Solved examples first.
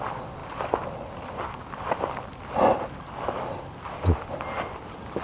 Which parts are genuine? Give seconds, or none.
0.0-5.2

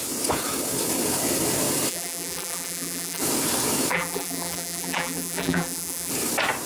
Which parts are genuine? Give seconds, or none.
0.0-1.9; 3.2-3.9; 6.1-6.7

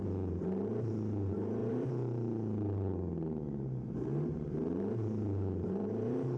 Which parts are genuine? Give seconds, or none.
none

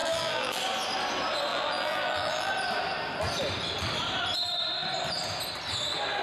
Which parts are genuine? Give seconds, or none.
0.6-1.5; 2.5-6.2

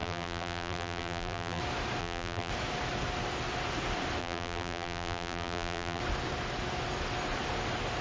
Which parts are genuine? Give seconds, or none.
1.6-2.0; 2.5-4.2; 6.0-8.0

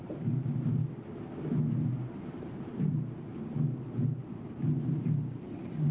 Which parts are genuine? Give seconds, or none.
0.8-1.9; 3.3-4.3

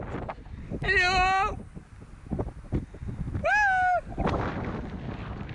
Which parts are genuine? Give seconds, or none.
0.0-5.5

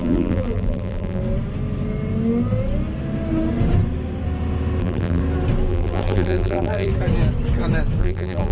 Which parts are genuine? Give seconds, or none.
1.2-4.8; 5.2-5.7; 6.9-8.0